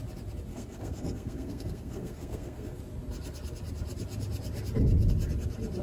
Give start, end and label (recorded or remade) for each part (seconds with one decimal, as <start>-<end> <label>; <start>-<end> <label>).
0.0-0.5 recorded; 0.5-2.8 remade; 2.8-5.8 recorded